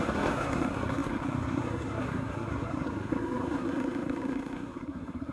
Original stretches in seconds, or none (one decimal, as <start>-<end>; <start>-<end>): none